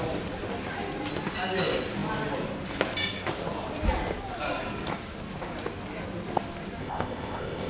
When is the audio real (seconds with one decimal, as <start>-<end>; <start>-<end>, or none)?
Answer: 0.0-6.8